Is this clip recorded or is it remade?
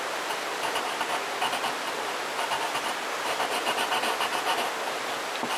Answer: recorded